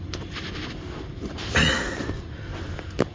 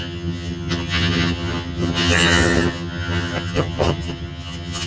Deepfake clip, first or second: second